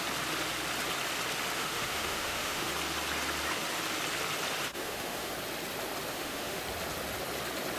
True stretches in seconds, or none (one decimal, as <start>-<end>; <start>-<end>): 0.0-1.6; 2.7-4.7; 5.3-6.1; 6.6-7.8